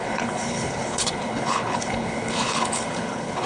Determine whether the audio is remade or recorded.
remade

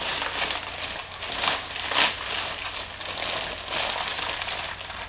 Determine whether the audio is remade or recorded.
recorded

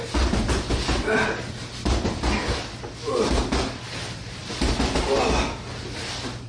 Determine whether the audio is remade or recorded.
recorded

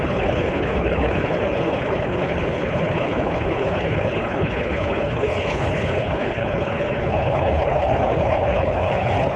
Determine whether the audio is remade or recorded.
remade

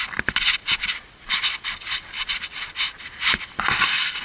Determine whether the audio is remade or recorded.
recorded